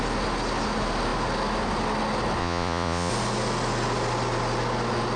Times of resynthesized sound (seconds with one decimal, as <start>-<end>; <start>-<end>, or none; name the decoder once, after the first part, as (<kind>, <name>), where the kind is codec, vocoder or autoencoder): 2.4-3.1 (vocoder, Vocos)